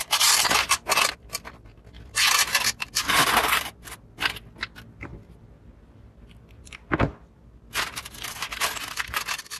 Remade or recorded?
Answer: recorded